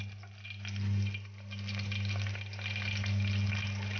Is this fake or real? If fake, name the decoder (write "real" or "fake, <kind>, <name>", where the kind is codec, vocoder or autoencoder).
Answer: real